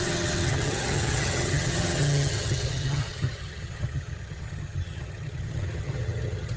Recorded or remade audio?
remade